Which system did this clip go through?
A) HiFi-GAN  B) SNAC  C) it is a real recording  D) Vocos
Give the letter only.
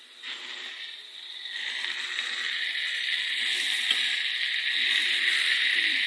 C